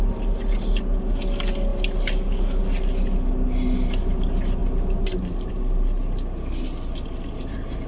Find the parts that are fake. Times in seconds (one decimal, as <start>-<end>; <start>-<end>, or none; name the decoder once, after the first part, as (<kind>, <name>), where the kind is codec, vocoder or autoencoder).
none